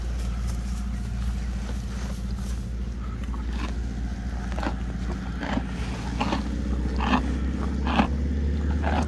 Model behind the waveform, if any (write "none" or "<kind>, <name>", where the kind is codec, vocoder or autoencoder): none